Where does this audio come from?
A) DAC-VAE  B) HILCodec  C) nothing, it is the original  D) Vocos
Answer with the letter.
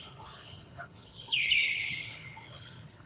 B